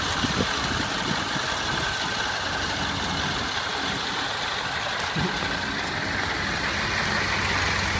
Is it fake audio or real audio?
real